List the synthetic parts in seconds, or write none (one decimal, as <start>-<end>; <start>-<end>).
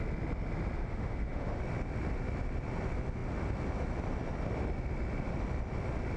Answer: 0.8-1.6